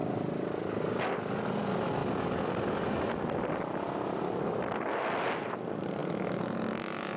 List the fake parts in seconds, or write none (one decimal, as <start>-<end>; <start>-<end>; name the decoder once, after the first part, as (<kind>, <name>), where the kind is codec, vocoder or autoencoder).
none